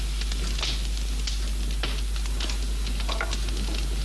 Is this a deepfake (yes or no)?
no